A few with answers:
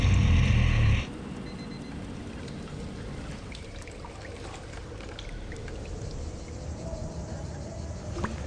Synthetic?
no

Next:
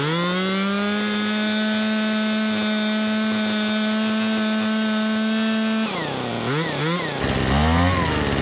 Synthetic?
no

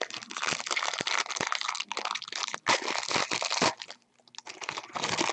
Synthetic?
no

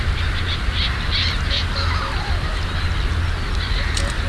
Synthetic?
no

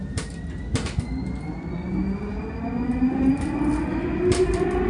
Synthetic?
no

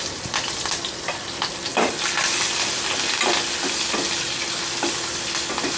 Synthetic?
no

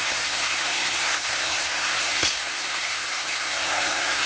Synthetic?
yes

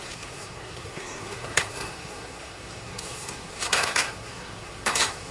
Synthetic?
yes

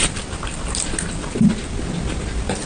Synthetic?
no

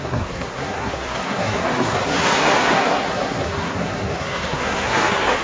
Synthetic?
yes